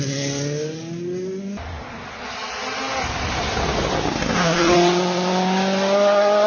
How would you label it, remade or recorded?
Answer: recorded